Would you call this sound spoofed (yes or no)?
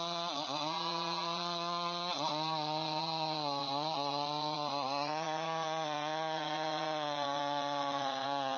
yes